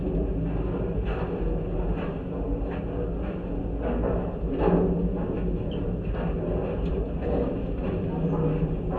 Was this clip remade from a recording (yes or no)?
no